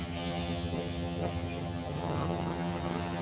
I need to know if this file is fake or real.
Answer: fake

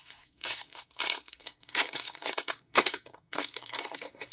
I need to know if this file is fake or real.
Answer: fake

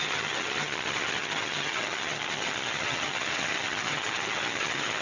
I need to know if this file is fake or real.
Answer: fake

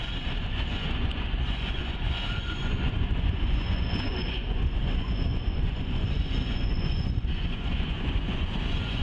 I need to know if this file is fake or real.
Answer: fake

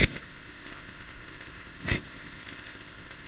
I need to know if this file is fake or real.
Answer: fake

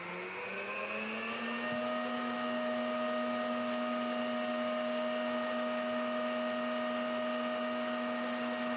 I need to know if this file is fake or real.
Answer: real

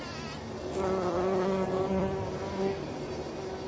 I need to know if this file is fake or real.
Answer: real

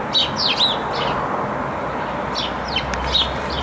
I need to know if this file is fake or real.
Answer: real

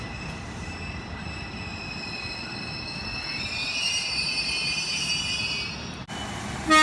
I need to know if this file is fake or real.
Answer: real